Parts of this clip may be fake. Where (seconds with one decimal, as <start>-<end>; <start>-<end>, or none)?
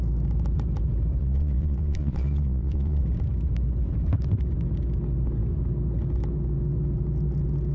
1.2-3.0